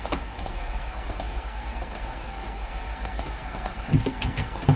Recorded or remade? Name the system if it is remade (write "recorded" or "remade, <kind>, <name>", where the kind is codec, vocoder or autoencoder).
remade, codec, SNAC